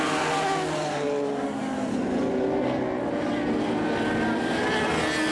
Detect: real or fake real